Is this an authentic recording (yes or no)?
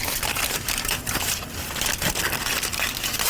yes